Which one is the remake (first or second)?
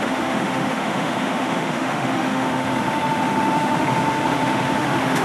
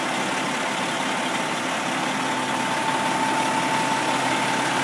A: first